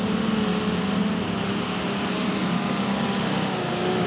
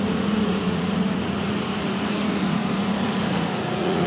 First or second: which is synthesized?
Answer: second